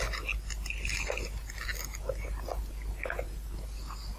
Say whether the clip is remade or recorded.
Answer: recorded